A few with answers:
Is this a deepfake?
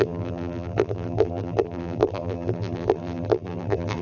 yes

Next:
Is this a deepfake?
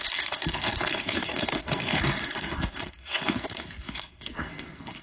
yes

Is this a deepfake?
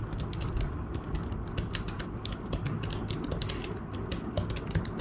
no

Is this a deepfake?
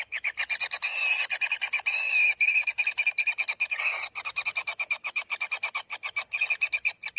no